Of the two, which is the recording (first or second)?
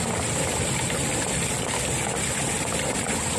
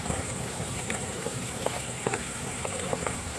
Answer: first